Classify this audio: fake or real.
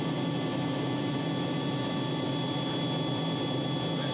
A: real